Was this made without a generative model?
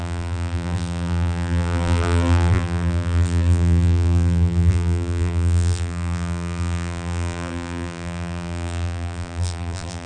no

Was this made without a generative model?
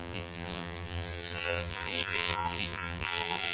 no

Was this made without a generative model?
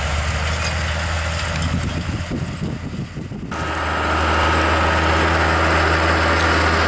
yes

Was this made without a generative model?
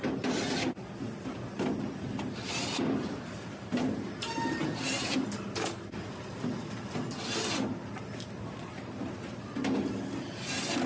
yes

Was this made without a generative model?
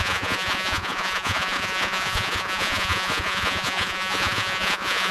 no